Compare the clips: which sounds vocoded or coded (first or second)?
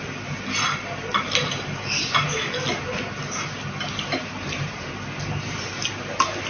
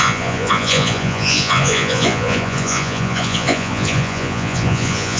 second